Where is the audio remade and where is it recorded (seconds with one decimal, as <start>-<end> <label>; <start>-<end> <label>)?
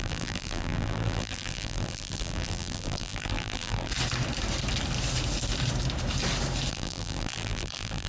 0.0-3.9 remade; 3.9-6.7 recorded; 6.7-8.1 remade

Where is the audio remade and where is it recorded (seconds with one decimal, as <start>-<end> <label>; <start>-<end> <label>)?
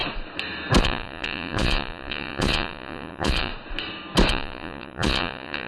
0.0-0.8 recorded; 0.8-3.5 remade; 3.5-4.3 recorded; 4.3-5.7 remade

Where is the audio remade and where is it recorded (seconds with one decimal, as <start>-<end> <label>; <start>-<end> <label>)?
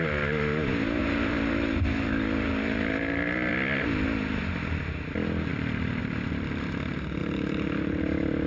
0.0-1.0 recorded; 1.0-3.5 remade; 3.5-5.5 recorded; 5.5-6.0 remade; 6.0-7.2 recorded; 7.2-8.0 remade; 8.0-8.5 recorded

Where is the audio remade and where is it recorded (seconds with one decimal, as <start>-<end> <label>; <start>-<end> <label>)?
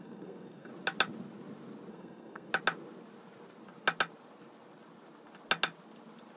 0.0-0.7 remade; 0.7-1.9 recorded; 1.9-2.5 remade; 2.5-6.4 recorded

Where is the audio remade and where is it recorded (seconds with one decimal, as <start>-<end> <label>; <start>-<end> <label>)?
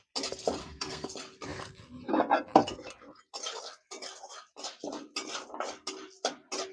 0.0-0.6 recorded; 0.6-1.1 remade; 1.1-6.7 recorded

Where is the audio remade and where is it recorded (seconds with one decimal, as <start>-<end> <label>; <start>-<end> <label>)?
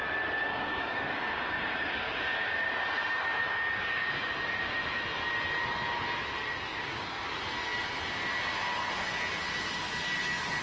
0.0-0.5 recorded; 0.5-2.5 remade; 2.5-3.4 recorded; 3.4-4.1 remade; 4.1-6.7 recorded; 6.7-7.3 remade; 7.3-10.6 recorded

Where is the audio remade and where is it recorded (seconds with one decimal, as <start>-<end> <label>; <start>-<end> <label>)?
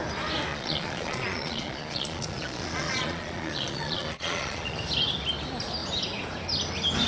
0.0-0.5 recorded; 0.5-4.8 remade; 4.8-7.1 recorded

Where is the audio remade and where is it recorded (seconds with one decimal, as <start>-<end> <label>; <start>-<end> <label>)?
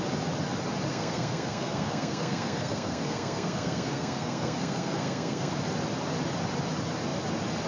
0.0-0.9 recorded; 0.9-5.5 remade; 5.5-7.7 recorded